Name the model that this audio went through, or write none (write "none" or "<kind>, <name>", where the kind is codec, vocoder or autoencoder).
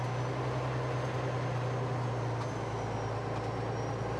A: none